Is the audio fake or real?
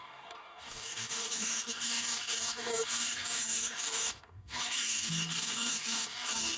fake